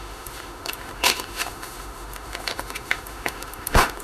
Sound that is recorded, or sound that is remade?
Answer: remade